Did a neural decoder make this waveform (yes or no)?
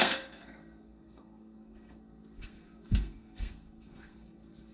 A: yes